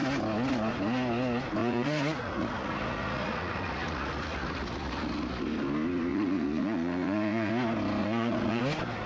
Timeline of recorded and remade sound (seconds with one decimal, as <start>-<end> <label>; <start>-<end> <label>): 0.0-1.6 recorded; 1.6-5.4 remade; 5.4-6.1 recorded; 6.1-7.5 remade; 7.5-8.0 recorded; 8.0-8.6 remade; 8.6-9.1 recorded